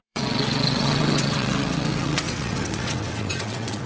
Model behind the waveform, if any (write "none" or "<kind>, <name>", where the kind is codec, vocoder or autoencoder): vocoder, WaveNeXt